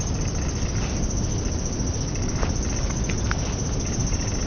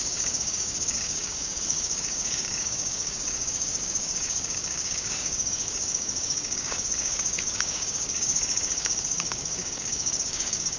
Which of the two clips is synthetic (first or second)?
second